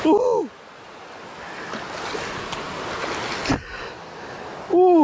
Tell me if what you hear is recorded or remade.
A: recorded